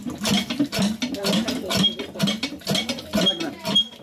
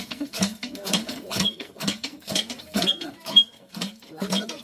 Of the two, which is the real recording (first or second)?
first